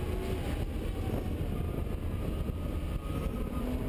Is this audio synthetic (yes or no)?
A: no